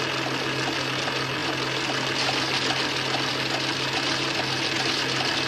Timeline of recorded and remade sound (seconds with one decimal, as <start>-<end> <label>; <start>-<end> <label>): 0.0-5.5 recorded